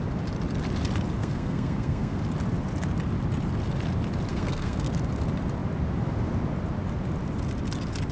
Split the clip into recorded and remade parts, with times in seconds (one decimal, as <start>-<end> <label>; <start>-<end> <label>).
0.0-1.2 recorded; 1.2-2.2 remade; 2.2-4.3 recorded; 4.3-4.9 remade; 4.9-8.1 recorded